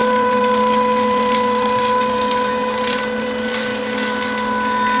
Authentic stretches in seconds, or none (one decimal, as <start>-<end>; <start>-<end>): 3.7-5.0